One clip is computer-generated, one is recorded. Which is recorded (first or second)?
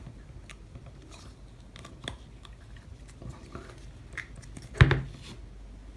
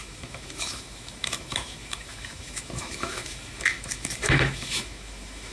first